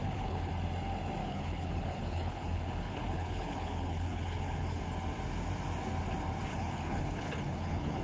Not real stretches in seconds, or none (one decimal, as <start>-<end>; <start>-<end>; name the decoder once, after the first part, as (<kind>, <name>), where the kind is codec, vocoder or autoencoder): 0.0-0.5 (codec, HILCodec); 1.2-4.8; 6.5-8.0